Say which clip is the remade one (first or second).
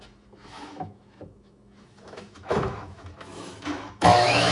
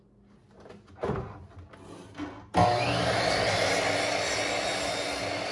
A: first